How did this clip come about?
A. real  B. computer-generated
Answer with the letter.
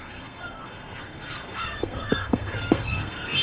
B